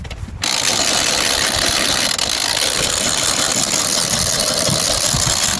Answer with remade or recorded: recorded